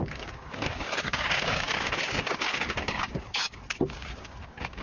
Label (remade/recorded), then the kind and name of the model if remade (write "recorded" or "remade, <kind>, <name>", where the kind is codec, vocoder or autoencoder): remade, codec, DAC